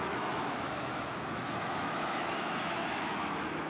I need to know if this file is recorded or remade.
remade